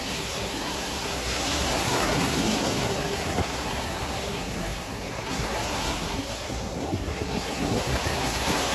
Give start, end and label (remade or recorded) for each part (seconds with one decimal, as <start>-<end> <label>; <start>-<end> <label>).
0.0-8.7 remade